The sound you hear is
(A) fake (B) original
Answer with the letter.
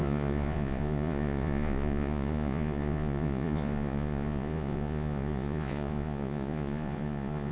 A